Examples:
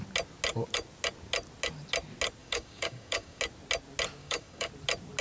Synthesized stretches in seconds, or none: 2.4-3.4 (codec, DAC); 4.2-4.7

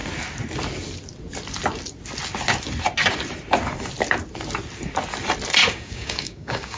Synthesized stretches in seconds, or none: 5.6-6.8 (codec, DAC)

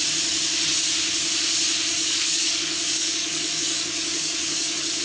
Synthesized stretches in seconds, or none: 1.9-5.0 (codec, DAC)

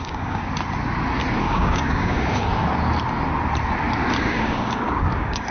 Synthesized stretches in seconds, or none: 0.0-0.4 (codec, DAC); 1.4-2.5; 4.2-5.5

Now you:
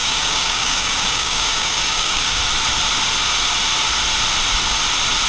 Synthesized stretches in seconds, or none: 0.0-2.4 (codec, DAC)